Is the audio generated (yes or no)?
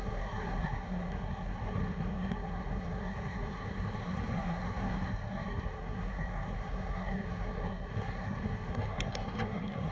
yes